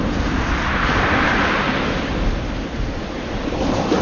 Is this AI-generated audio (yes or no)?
no